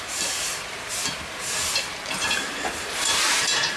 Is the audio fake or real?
fake